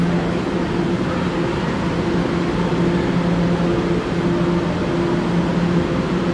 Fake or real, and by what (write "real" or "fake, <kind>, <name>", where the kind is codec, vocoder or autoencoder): real